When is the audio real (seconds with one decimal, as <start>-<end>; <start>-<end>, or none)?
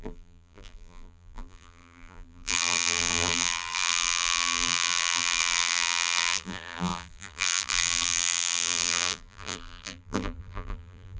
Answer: none